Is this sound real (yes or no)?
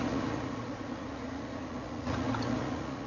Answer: no